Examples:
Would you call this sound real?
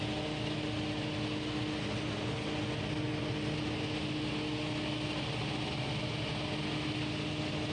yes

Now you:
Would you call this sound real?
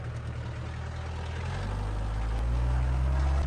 yes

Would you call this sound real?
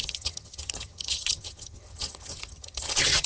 no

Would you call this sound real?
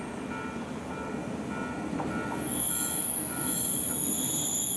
yes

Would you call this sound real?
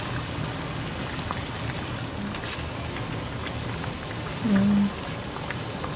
yes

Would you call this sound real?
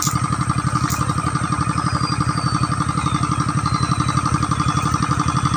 yes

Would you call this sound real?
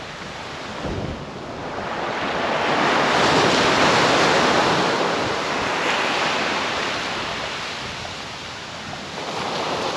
yes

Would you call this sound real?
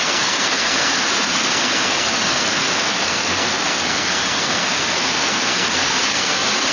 no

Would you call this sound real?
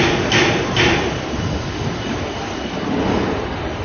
yes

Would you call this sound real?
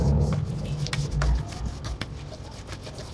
yes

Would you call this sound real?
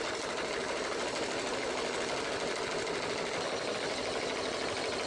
yes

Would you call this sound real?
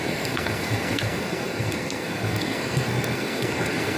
no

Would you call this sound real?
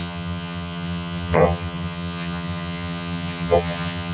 no